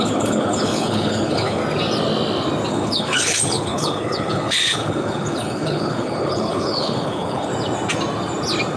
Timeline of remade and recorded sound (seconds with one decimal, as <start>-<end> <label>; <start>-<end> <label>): 0.0-1.6 remade; 1.6-2.7 recorded; 2.7-7.5 remade; 7.5-8.8 recorded